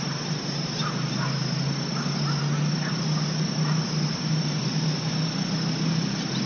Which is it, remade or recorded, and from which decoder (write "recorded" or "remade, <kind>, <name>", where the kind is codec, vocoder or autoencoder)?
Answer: recorded